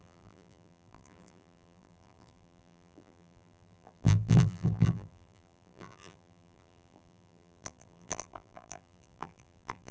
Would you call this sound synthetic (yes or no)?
yes